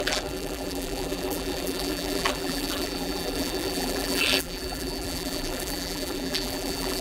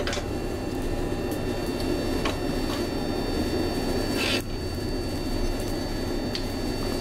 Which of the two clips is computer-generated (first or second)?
first